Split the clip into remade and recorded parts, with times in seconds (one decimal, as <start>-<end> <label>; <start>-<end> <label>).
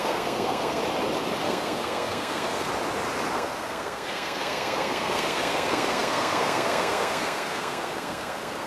0.0-0.8 remade; 0.8-1.4 recorded; 1.4-2.7 remade; 2.7-3.3 recorded; 3.3-8.7 remade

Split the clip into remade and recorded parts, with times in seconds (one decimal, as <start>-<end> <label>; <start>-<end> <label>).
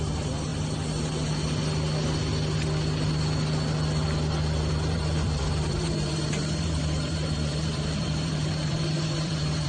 0.0-0.5 remade; 0.5-4.7 recorded; 4.7-9.7 remade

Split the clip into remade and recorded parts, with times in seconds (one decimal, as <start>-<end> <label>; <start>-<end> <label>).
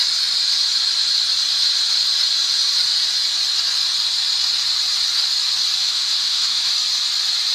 0.0-5.8 recorded; 5.8-6.7 remade; 6.7-7.5 recorded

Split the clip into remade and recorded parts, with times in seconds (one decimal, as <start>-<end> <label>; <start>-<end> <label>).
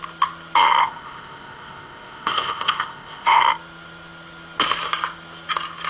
0.0-0.8 recorded; 0.8-3.4 remade; 3.4-5.9 recorded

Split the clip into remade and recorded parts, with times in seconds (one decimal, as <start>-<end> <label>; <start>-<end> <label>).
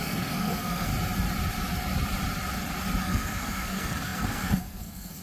0.0-0.9 remade; 0.9-3.0 recorded; 3.0-5.2 remade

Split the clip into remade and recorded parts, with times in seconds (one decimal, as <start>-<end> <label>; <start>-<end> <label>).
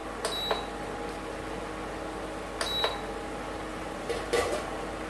0.0-3.7 recorded; 3.7-5.1 remade